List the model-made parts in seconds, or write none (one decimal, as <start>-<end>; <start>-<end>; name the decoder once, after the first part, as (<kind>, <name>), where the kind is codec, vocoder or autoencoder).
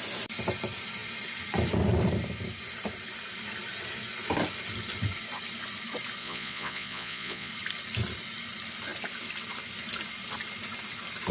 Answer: 6.2-7.5 (vocoder, Vocos)